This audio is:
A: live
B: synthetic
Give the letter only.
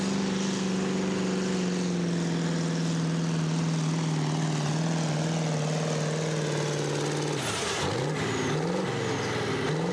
A